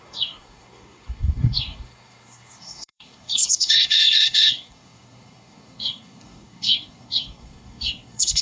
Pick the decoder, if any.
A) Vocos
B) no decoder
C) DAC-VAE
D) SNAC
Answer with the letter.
D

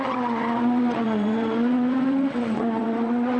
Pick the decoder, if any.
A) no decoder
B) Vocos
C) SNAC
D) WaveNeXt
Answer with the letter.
D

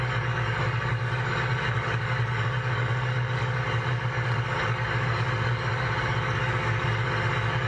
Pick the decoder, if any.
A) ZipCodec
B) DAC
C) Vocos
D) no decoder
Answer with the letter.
B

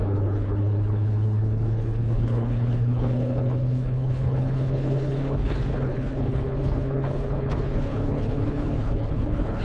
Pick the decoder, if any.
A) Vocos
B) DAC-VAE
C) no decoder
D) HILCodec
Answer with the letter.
D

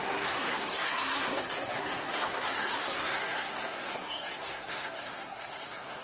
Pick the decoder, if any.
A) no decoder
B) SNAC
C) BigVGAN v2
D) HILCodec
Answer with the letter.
B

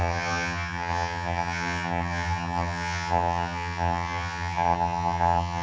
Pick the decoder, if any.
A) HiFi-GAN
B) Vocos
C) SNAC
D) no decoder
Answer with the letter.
A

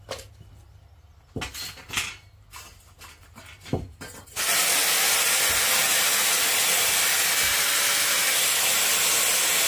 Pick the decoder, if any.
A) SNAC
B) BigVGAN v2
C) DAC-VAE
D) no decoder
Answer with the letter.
D